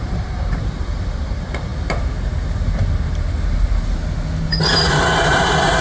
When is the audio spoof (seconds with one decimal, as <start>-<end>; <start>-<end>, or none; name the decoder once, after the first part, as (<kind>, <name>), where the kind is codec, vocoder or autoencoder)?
0.0-1.7 (vocoder, BigVGAN v2); 5.2-5.8